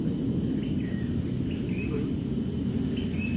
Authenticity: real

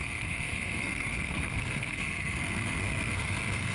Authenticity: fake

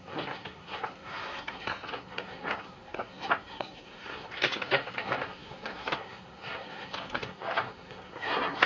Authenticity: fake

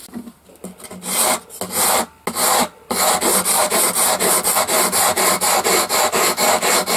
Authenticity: real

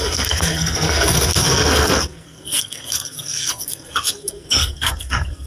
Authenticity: fake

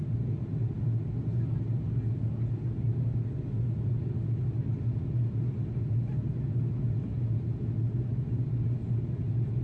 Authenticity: real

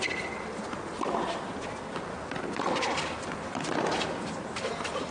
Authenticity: real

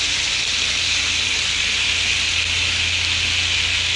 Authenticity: real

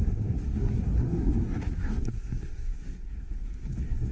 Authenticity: fake